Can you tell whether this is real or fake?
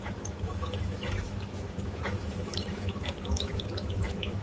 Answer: fake